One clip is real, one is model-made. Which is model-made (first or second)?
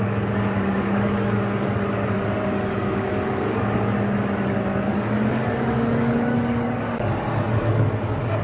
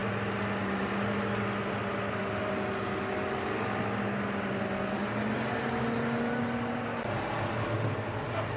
first